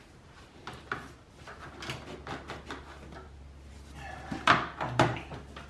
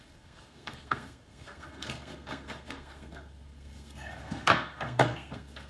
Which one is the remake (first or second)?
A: second